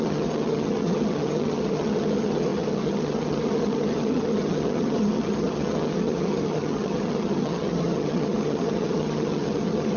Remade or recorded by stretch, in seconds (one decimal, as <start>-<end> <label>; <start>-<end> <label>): 0.0-10.0 remade